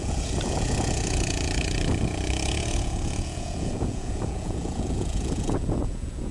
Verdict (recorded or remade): remade